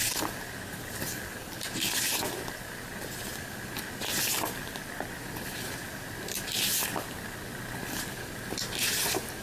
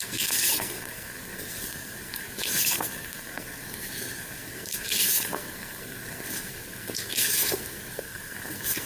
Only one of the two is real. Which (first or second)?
first